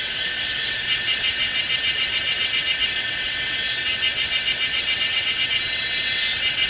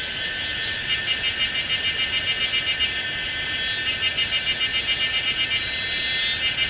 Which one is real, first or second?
second